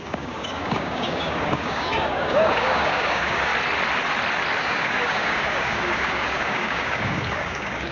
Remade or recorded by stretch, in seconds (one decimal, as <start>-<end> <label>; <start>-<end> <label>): 0.0-3.5 remade; 3.5-4.6 recorded; 4.6-7.9 remade